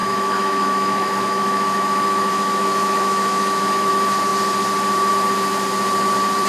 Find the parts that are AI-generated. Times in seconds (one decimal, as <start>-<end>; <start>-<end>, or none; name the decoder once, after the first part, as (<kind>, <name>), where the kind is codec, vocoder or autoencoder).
0.0-3.9 (autoencoder, DAC-VAE)